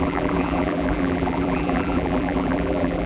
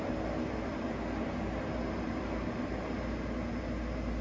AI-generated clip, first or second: first